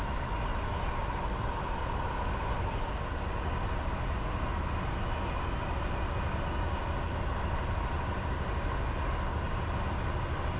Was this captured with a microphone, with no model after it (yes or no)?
yes